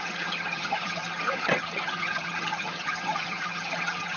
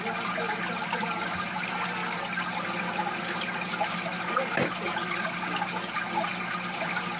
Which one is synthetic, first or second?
first